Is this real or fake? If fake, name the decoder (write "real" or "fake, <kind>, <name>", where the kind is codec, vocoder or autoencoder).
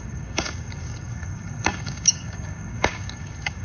fake, codec, DAC